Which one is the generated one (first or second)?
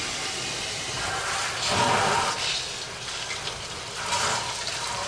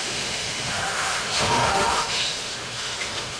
second